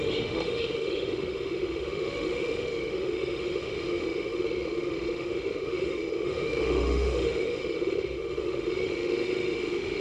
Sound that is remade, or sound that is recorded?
remade